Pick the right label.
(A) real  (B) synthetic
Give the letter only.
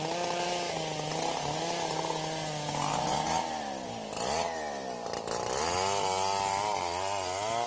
A